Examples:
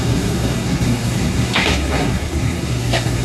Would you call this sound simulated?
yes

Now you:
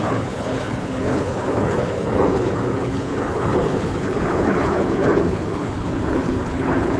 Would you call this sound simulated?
yes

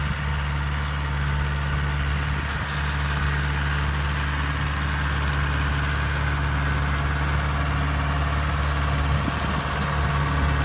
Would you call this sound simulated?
no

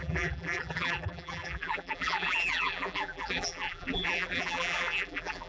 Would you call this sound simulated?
yes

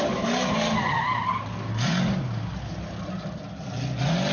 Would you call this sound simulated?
no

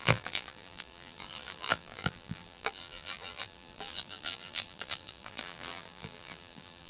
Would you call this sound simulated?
yes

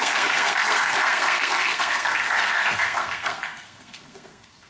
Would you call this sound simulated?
yes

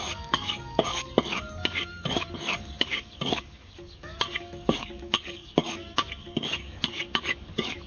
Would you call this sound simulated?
yes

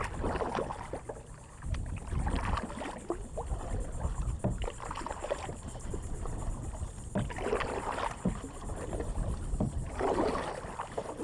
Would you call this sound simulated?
no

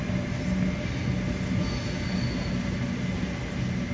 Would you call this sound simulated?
no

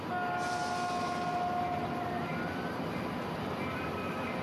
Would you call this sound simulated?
no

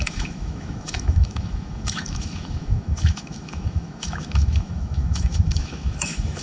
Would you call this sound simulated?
yes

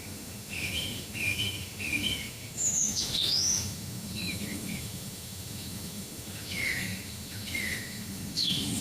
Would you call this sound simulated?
yes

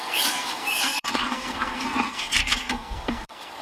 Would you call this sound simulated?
yes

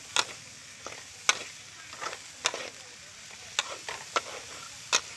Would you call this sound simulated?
no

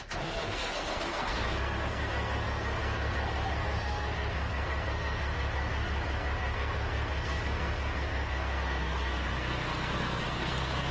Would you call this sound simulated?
yes